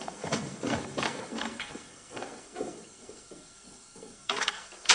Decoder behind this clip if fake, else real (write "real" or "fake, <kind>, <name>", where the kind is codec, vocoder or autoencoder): fake, codec, SNAC